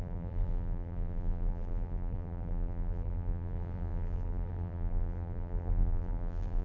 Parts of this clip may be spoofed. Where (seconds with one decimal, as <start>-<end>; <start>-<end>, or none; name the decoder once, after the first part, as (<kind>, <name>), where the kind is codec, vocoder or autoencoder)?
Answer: 0.0-6.6 (vocoder, BigVGAN v2)